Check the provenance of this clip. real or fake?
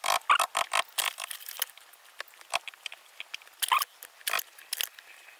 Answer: real